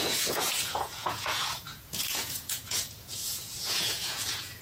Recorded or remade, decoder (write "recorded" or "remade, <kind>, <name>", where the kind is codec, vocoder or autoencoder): remade, vocoder, Vocos